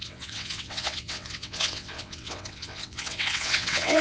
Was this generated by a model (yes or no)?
yes